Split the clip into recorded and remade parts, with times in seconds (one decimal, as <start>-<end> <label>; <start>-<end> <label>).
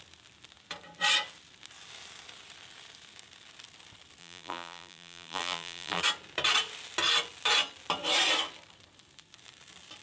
0.0-4.2 recorded; 4.2-6.0 remade; 6.0-10.0 recorded